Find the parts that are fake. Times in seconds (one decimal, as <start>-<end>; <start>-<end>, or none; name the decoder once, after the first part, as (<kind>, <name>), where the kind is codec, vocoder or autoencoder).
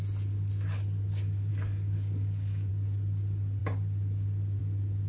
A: 1.5-2.7 (codec, DAC)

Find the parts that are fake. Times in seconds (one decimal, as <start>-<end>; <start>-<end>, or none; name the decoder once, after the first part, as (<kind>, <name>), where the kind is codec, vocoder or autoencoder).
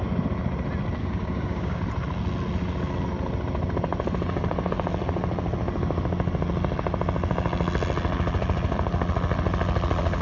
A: 1.0-1.8 (codec, DAC)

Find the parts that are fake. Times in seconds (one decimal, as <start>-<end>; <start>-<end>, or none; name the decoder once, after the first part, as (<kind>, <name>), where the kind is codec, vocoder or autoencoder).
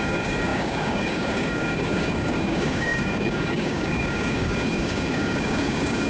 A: 0.0-6.1 (codec, DAC)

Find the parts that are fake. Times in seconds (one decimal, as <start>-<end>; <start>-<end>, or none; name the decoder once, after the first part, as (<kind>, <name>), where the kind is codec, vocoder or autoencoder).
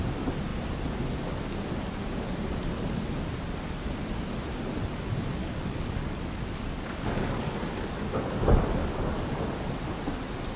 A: 5.4-8.3 (codec, DAC); 8.8-9.4